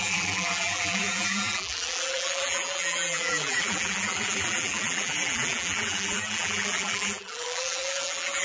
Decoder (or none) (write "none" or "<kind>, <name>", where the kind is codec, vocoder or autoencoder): vocoder, BigVGAN v2